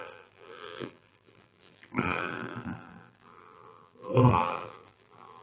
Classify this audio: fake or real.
fake